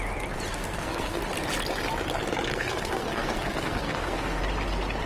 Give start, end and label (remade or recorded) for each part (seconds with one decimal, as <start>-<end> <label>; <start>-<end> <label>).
0.0-0.5 recorded; 0.5-1.2 remade; 1.2-2.5 recorded; 2.5-4.4 remade; 4.4-5.1 recorded